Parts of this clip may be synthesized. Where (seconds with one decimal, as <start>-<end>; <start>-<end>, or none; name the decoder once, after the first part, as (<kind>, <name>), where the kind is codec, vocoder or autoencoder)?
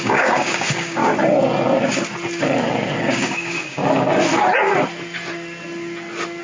0.0-1.0 (codec, DAC); 3.0-3.8